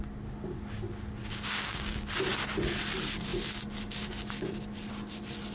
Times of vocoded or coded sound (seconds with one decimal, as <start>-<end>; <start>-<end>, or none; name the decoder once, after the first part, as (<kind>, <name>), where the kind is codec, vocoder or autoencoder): 1.2-2.0 (codec, DAC)